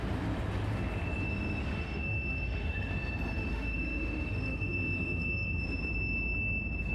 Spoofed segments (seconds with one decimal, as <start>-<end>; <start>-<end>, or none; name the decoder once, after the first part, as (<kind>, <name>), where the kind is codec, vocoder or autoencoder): 1.7-2.9 (autoencoder, DAC-VAE); 3.3-5.6

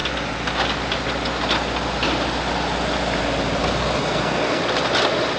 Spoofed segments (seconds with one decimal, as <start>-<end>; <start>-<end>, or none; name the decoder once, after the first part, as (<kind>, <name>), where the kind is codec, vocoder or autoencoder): 4.0-4.6 (codec, SNAC)

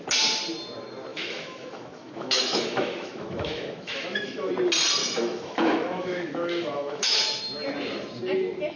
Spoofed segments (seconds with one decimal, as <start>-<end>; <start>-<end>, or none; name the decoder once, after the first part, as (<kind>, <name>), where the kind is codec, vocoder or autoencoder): 1.1-4.5 (autoencoder, DAC-VAE); 5.0-7.4

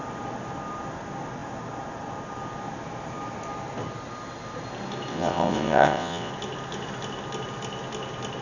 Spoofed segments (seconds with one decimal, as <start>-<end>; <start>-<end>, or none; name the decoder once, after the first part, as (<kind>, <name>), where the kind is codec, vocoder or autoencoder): 5.1-6.3 (vocoder, WaveNeXt)

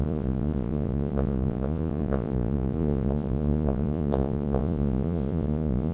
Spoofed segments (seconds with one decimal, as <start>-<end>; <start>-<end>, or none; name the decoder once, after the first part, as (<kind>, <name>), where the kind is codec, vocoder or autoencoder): 0.0-5.9 (vocoder, Vocos)